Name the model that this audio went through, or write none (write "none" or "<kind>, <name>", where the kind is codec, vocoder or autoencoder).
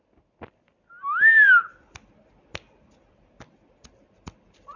none